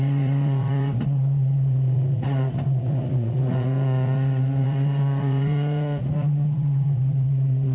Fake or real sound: fake